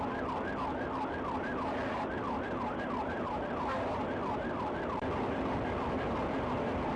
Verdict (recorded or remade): recorded